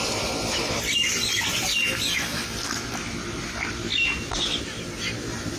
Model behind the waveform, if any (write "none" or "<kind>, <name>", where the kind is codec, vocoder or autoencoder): none